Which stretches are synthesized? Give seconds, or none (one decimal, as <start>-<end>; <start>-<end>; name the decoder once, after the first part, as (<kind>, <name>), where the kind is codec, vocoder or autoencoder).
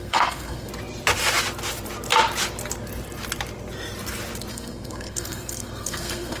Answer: 0.0-0.7 (codec, SNAC); 4.5-6.4